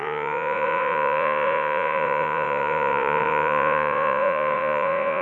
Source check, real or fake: fake